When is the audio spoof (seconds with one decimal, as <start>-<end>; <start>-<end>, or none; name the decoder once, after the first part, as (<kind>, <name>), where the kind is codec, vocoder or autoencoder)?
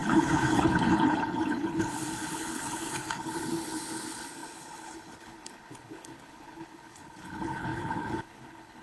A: 0.0-8.8 (codec, HILCodec)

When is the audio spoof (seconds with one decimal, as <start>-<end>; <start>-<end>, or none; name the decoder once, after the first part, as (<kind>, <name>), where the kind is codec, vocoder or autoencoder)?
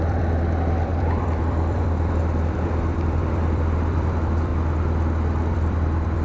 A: 0.0-4.5 (vocoder, BigVGAN v2); 5.5-6.2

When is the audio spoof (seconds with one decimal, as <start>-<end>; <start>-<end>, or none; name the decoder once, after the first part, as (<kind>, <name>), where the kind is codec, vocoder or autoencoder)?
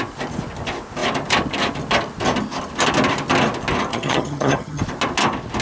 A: 3.9-4.8 (vocoder, HiFi-GAN)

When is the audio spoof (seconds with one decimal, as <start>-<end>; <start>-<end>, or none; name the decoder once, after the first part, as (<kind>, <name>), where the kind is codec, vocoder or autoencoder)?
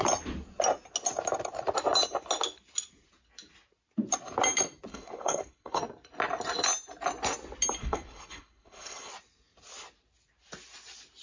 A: 4.9-5.8 (codec, HILCodec); 7.8-9.1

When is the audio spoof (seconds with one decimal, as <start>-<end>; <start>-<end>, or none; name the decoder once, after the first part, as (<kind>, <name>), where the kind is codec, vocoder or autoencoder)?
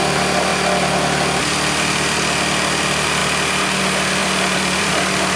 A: 0.5-1.4 (vocoder, BigVGAN v2); 4.2-4.9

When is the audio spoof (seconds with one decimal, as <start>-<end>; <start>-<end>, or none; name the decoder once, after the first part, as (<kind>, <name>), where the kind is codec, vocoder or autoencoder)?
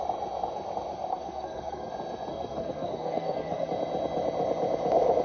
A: 1.1-1.9 (codec, SNAC); 2.3-3.7